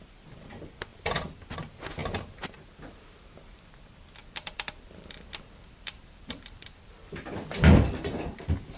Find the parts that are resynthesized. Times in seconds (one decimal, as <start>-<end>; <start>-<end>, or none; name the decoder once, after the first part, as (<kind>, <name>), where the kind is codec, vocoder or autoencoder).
0.9-1.5 (vocoder, BigVGAN v2); 4.2-8.4